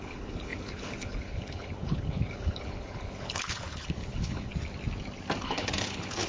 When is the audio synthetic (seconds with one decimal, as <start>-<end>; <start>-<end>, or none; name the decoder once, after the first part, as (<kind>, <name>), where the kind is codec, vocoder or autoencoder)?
0.0-4.5 (codec, HILCodec); 5.4-6.3